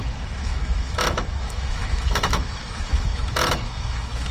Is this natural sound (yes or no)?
no